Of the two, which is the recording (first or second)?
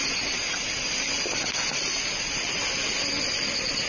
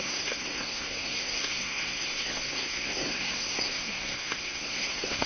first